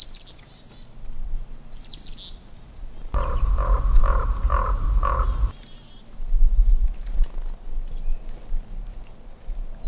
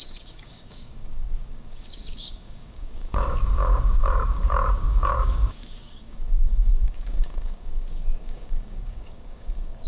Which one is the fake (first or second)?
second